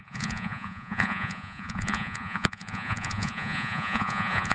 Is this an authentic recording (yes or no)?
no